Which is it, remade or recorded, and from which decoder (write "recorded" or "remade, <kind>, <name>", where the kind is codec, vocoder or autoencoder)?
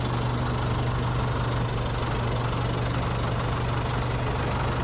recorded